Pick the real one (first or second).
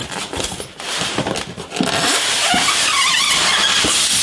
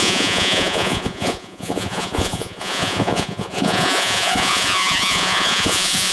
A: first